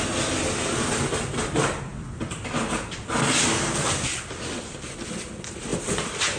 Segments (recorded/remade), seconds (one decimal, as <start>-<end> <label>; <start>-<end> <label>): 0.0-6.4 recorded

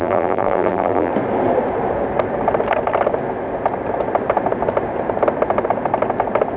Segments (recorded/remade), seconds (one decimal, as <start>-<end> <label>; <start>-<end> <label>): 0.0-1.1 remade; 1.1-6.6 recorded

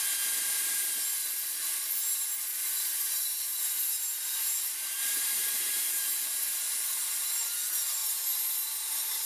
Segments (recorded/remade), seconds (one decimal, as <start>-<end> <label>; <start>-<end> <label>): 0.0-2.5 recorded; 2.5-6.4 remade; 6.4-9.3 recorded

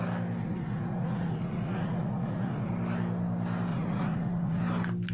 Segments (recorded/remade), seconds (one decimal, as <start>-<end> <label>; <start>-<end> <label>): 0.0-0.4 recorded; 0.4-2.7 remade; 2.7-3.7 recorded; 3.7-4.6 remade; 4.6-5.1 recorded

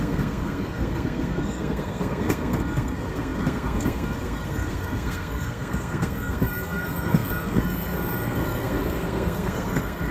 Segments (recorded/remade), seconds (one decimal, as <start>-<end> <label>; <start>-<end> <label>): 0.0-10.1 remade

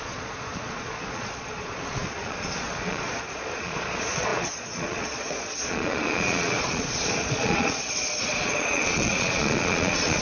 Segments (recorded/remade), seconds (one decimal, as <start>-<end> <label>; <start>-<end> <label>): 0.0-10.2 remade